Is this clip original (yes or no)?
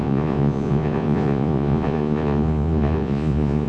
no